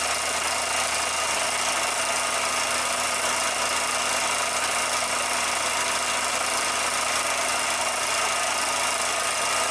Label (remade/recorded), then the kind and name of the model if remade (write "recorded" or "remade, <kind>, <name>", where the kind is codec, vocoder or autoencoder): recorded